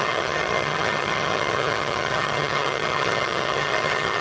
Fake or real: fake